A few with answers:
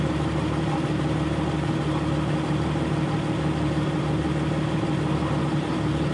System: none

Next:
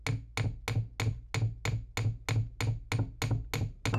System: none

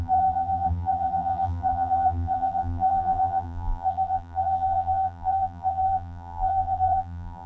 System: vocoder, BigVGAN v2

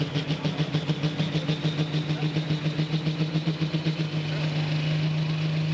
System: none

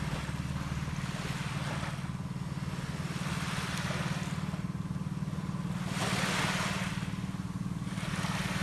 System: none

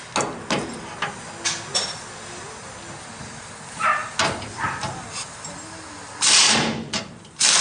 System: none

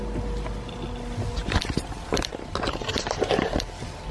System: vocoder, BigVGAN v2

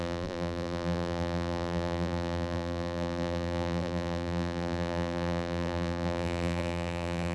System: vocoder, BigVGAN v2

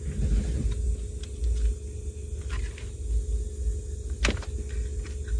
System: none